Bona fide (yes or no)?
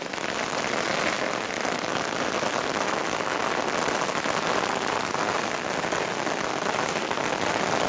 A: yes